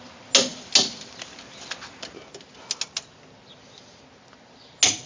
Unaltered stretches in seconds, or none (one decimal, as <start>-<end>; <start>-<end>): 0.0-5.1